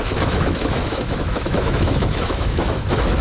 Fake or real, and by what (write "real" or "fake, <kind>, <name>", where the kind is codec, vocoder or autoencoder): fake, autoencoder, DAC-VAE